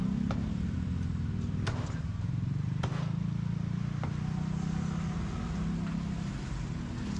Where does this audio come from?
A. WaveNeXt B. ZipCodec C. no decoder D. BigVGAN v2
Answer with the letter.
C